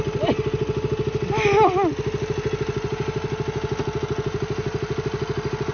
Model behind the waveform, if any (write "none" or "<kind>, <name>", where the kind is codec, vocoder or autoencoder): none